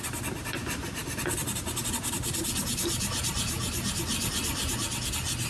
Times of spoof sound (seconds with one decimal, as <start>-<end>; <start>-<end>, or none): none